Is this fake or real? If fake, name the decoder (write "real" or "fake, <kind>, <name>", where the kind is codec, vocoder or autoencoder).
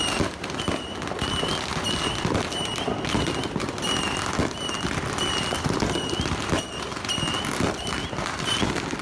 real